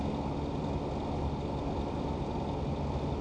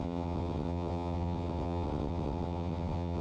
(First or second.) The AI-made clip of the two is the second